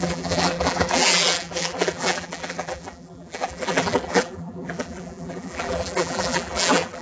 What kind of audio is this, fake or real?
fake